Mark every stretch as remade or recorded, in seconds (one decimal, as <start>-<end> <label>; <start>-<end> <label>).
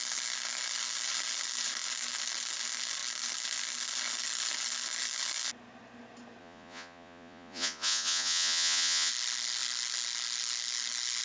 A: 0.0-6.4 recorded; 6.4-9.1 remade; 9.1-11.2 recorded